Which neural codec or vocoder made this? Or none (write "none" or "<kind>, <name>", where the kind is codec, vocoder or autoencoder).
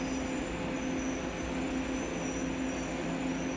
none